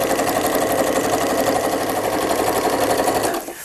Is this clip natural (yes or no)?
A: no